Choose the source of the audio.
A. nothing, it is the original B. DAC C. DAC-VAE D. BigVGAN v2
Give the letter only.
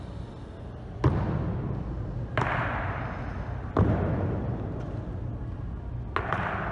A